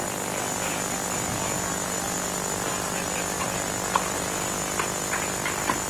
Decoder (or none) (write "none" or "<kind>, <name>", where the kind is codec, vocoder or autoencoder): none